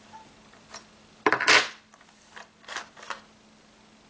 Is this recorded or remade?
recorded